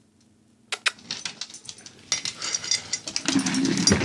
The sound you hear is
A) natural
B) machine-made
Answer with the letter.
A